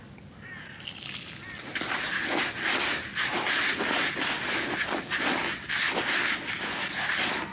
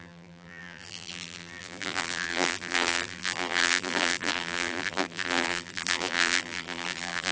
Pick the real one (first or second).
first